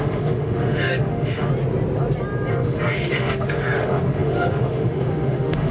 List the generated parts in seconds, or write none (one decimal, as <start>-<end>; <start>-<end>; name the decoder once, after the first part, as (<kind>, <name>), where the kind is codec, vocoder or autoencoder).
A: 0.0-1.5 (autoencoder, DAC-VAE); 2.5-5.7